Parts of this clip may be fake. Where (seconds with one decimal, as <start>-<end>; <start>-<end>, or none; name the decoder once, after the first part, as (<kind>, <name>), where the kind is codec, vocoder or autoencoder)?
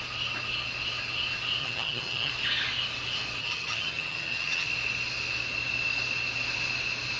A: 1.6-2.3 (vocoder, HiFi-GAN); 3.4-4.7